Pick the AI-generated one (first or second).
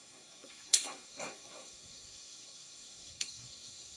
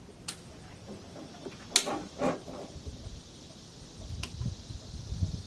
first